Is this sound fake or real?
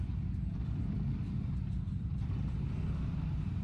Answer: real